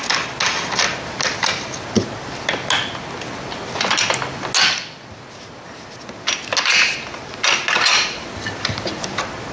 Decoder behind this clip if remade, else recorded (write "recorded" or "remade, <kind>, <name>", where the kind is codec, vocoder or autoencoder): recorded